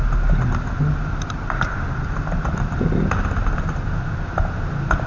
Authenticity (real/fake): real